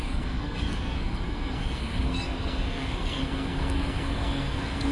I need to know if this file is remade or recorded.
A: remade